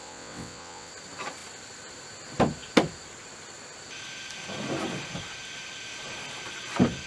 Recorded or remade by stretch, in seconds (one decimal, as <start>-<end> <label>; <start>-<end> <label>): 0.0-0.9 remade; 0.9-7.1 recorded